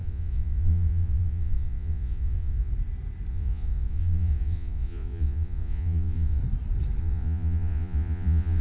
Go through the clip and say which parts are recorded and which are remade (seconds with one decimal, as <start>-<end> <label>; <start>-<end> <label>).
0.0-2.7 remade; 2.7-3.3 recorded; 3.3-6.4 remade; 6.4-7.0 recorded; 7.0-8.6 remade